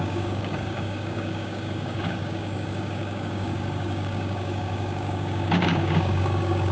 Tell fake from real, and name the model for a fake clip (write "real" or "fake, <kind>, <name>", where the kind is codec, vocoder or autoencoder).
fake, codec, DAC